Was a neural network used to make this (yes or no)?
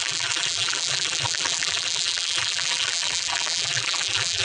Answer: yes